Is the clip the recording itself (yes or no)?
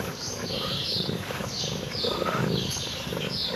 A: no